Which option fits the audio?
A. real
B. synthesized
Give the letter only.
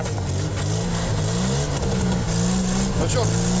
A